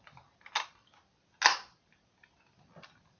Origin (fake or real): real